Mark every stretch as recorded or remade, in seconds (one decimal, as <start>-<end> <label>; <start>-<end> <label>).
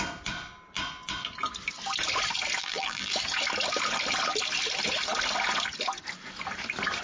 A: 0.0-2.6 recorded; 2.6-3.1 remade; 3.1-7.0 recorded